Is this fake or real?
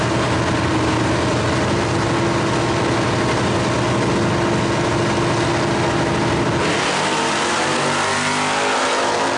real